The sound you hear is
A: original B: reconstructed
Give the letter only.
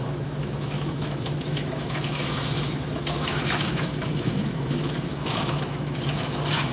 B